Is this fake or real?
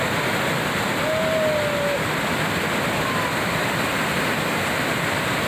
real